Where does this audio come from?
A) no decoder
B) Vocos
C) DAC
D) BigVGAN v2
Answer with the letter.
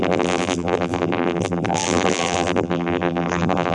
D